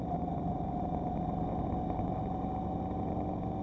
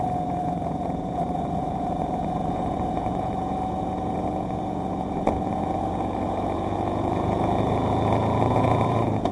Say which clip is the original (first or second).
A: first